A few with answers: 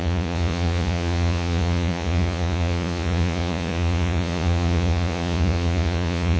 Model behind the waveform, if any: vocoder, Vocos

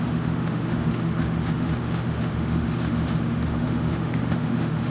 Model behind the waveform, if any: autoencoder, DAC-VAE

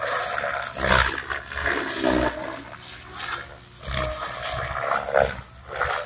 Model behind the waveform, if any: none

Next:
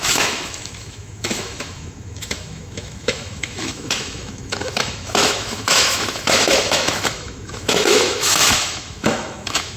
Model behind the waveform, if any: autoencoder, DAC-VAE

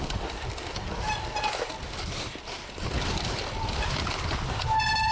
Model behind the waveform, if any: none